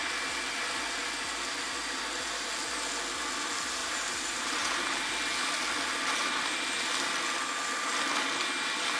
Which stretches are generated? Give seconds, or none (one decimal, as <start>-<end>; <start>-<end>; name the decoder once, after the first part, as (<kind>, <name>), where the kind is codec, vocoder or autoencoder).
3.8-5.1 (vocoder, BigVGAN v2)